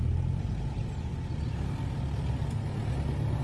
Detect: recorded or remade recorded